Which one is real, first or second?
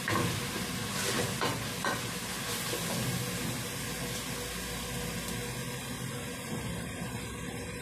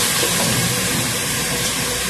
first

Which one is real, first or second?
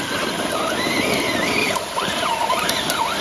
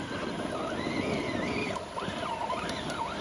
second